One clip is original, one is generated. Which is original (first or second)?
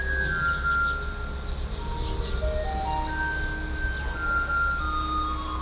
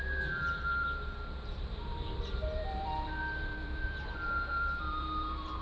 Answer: first